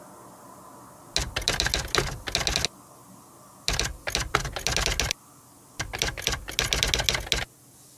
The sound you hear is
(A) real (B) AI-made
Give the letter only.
A